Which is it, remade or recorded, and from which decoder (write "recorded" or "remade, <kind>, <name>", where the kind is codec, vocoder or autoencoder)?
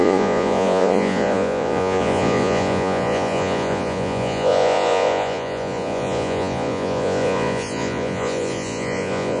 remade, vocoder, Vocos